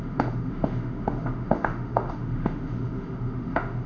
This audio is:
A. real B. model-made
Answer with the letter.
B